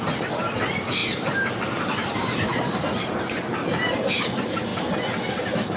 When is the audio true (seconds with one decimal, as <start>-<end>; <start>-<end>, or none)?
0.0-4.7